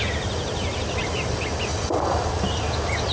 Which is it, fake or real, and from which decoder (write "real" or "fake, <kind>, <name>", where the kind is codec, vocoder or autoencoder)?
real